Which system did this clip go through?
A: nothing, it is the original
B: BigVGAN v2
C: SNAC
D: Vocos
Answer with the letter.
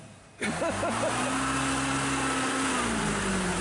A